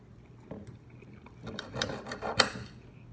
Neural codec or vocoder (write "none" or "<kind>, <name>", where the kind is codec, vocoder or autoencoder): none